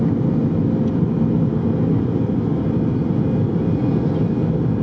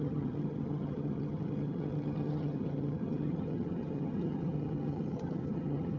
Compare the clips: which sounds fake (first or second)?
second